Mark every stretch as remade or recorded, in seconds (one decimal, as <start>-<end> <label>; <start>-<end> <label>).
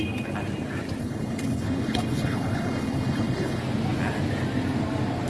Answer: 0.0-1.0 recorded; 1.0-3.6 remade; 3.6-5.3 recorded